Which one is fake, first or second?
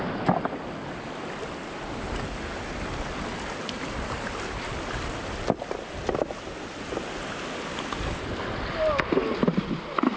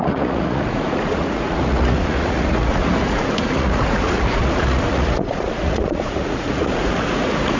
second